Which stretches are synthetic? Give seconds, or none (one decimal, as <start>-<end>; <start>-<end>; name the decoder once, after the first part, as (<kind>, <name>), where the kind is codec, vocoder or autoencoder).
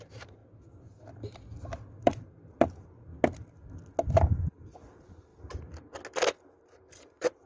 0.0-0.4 (vocoder, BigVGAN v2); 2.0-3.1; 4.1-5.3; 6.1-7.5